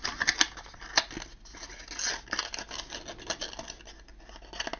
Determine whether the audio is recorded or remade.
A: recorded